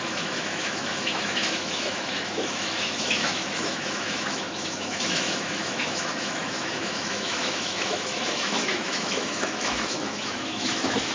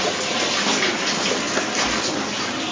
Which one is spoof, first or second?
first